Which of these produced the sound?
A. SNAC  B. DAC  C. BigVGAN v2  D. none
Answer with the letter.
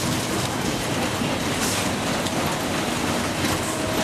D